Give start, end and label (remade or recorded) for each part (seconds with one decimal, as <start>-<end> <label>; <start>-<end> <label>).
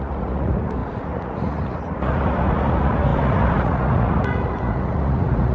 0.0-5.5 remade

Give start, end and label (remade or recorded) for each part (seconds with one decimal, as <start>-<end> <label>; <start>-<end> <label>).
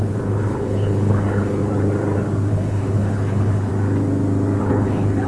0.0-1.6 remade; 1.6-2.5 recorded; 2.5-3.7 remade; 3.7-4.6 recorded; 4.6-5.3 remade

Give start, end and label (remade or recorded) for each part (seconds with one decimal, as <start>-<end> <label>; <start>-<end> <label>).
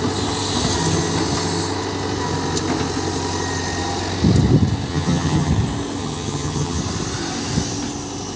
0.0-4.9 recorded; 4.9-5.5 remade; 5.5-6.0 recorded; 6.0-6.8 remade; 6.8-8.4 recorded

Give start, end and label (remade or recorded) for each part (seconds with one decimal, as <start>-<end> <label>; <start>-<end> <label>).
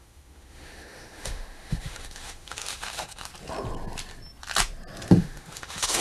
0.0-3.3 remade; 3.3-5.1 recorded; 5.1-6.0 remade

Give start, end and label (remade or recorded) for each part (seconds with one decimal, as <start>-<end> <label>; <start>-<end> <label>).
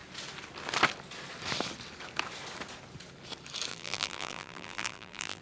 0.0-3.7 recorded; 3.7-5.4 remade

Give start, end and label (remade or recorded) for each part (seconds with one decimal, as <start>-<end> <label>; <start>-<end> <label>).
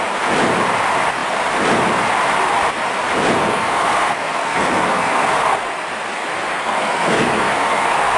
0.0-3.4 recorded; 3.4-5.6 remade; 5.6-6.6 recorded; 6.6-8.2 remade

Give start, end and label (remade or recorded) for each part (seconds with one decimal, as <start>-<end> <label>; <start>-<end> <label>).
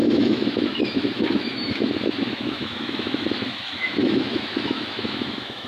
0.0-5.7 remade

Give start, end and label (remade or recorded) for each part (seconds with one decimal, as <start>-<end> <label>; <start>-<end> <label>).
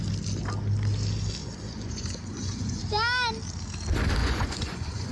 0.0-1.4 recorded; 1.4-2.8 remade; 2.8-4.2 recorded; 4.2-5.1 remade